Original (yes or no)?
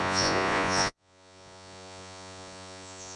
no